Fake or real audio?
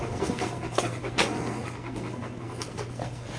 fake